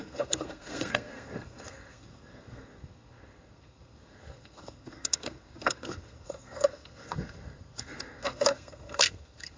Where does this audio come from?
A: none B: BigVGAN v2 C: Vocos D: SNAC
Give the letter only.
D